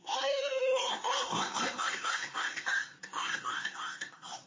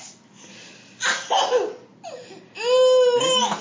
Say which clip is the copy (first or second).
first